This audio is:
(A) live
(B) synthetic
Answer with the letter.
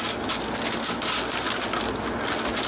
A